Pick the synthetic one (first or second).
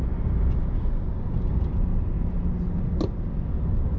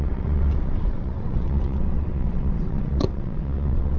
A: second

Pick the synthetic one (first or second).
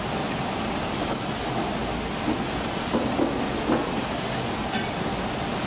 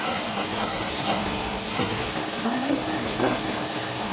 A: second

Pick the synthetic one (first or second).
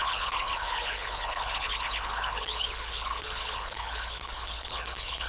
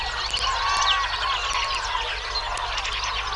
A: first